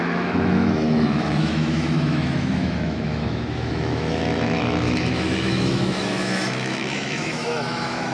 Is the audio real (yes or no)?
no